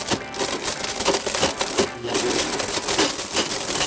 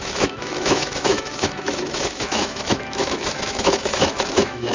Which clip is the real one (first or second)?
first